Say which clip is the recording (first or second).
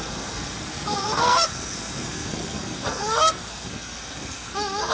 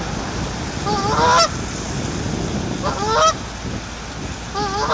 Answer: second